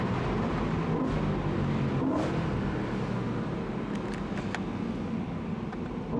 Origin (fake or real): real